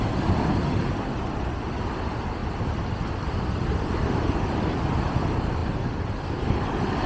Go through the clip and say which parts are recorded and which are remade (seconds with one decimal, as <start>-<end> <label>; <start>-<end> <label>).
0.0-7.1 recorded